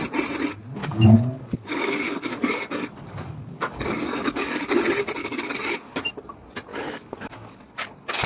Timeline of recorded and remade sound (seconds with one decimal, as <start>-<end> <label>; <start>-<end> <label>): 0.0-0.8 recorded; 0.8-4.8 remade; 4.8-5.2 recorded; 5.2-6.1 remade; 6.1-6.7 recorded; 6.7-7.9 remade; 7.9-8.3 recorded